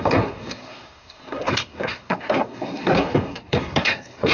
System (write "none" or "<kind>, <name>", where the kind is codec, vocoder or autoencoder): codec, SNAC